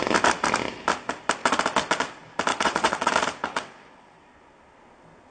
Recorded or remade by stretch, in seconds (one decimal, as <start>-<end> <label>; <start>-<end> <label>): 0.0-2.5 recorded; 2.5-3.1 remade; 3.1-3.5 recorded; 3.5-4.2 remade; 4.2-5.3 recorded